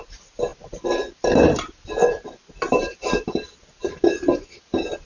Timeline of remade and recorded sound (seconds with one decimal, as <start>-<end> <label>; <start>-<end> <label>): 0.0-5.1 recorded